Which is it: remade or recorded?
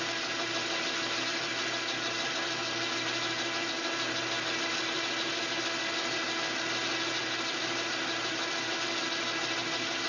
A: recorded